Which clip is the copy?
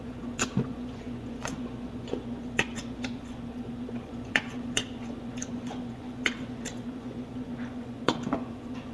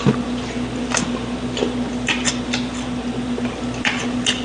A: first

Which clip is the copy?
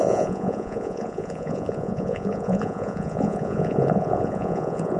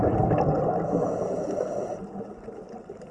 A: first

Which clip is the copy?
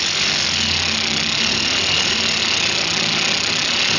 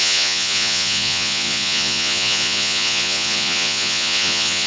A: second